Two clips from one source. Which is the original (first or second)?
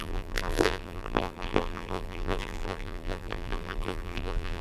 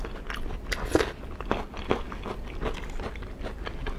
second